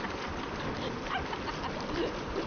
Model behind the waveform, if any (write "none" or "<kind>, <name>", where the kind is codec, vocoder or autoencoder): none